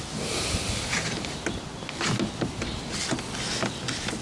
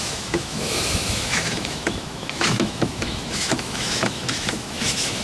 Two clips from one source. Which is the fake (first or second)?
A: second